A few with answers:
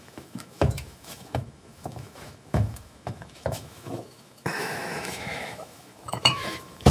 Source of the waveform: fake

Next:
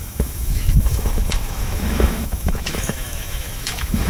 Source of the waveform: fake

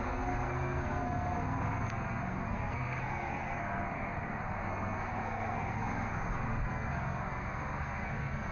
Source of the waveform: fake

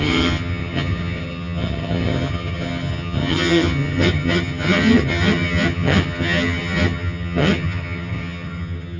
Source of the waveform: fake